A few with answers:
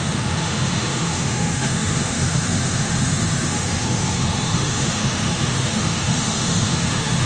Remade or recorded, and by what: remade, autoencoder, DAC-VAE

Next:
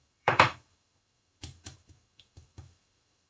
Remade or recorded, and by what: remade, autoencoder, DAC-VAE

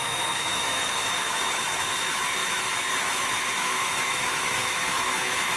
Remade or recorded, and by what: remade, autoencoder, DAC-VAE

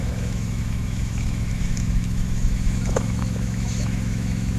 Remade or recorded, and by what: remade, autoencoder, DAC-VAE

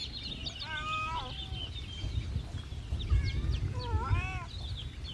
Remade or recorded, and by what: recorded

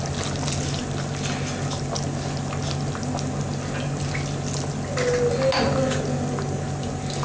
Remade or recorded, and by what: recorded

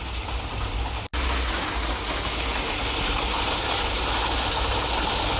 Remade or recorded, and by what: recorded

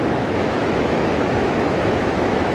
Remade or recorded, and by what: remade, autoencoder, DAC-VAE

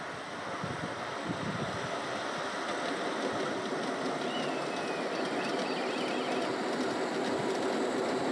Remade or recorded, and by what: recorded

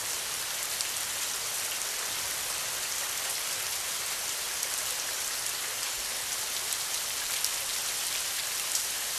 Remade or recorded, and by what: recorded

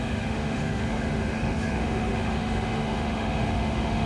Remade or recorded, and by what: remade, autoencoder, DAC-VAE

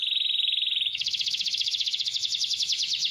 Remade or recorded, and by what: remade, autoencoder, DAC-VAE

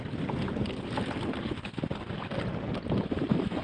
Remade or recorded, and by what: recorded